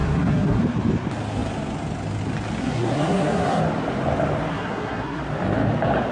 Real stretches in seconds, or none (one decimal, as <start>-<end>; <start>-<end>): 0.6-2.6; 3.6-4.5; 5.2-6.1